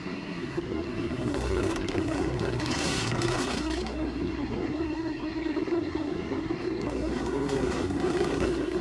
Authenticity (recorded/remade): remade